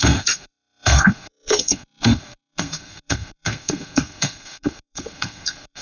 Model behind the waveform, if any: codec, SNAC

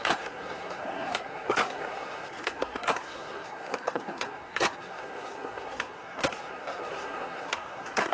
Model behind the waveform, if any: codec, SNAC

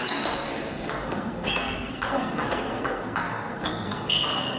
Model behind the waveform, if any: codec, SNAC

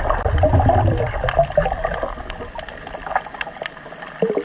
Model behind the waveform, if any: none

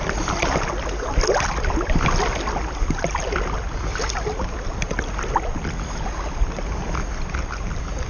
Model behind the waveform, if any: none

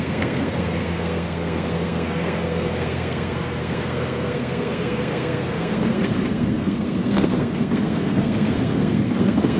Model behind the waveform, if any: codec, SNAC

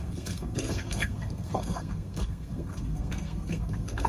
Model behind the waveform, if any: codec, SNAC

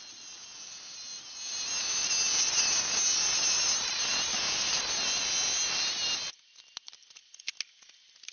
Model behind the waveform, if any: none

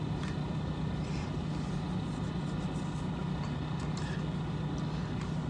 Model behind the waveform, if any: none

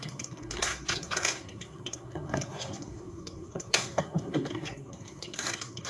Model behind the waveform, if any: codec, SNAC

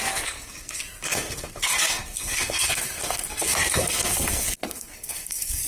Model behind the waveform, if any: codec, SNAC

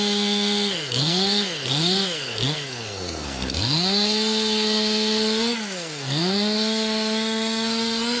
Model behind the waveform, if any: codec, SNAC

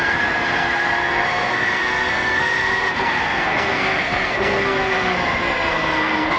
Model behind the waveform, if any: codec, SNAC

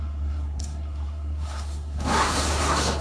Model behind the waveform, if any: codec, SNAC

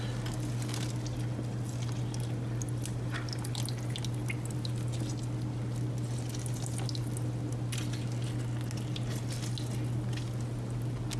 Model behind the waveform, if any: none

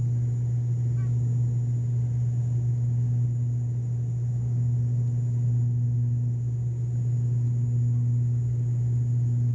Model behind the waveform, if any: none